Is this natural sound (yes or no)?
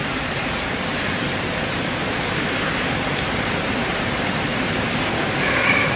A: no